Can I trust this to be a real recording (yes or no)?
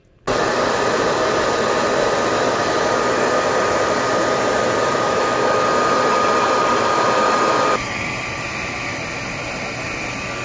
yes